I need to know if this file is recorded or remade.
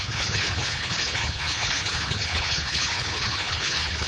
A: remade